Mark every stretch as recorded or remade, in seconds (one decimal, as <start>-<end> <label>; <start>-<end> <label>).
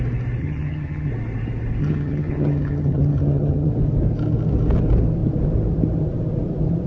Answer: 0.0-0.4 recorded; 0.4-1.1 remade; 1.1-1.8 recorded; 1.8-3.7 remade; 3.7-6.9 recorded